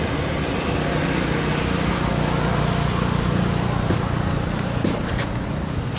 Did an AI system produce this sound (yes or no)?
no